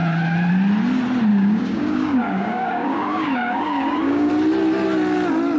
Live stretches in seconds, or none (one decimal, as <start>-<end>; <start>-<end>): 0.0-1.3; 4.3-5.6